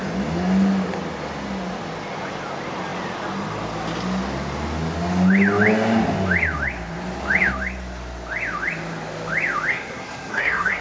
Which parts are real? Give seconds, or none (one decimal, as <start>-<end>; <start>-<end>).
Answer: 0.0-9.7